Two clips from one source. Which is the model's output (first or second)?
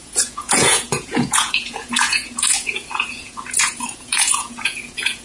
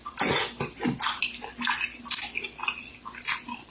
first